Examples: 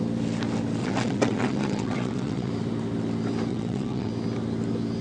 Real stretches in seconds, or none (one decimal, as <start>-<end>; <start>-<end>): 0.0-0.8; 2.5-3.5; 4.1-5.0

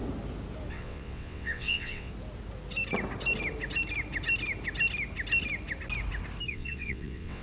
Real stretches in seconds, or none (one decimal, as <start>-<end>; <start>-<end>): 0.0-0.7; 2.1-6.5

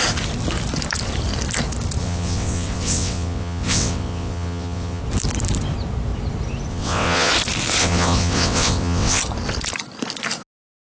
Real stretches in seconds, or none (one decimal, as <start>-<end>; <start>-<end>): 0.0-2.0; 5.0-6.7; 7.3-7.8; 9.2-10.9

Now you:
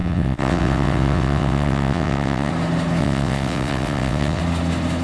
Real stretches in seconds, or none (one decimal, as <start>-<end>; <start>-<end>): 2.5-3.0; 4.4-5.0